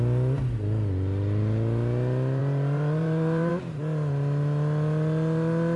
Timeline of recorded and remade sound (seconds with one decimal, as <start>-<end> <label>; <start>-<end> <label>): 0.0-2.4 recorded; 2.4-3.5 remade; 3.5-5.8 recorded